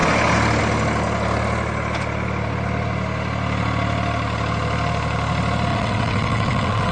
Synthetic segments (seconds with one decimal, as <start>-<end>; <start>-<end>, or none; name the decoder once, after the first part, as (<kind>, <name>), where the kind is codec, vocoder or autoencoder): 5.7-6.9 (vocoder, WaveNeXt)